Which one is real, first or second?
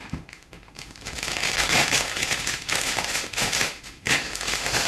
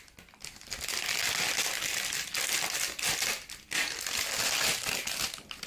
second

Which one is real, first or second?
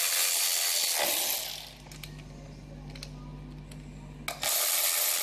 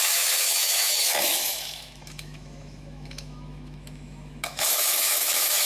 first